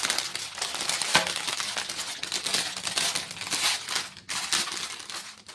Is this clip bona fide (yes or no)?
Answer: yes